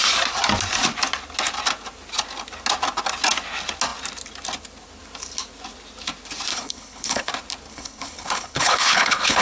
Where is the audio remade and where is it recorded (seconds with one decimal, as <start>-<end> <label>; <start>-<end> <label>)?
0.0-6.5 recorded; 6.5-7.3 remade; 7.3-7.7 recorded; 7.7-9.4 remade